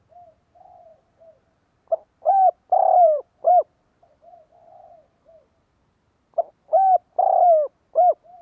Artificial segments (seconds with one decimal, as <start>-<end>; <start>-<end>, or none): 0.9-3.4